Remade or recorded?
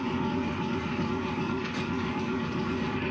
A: remade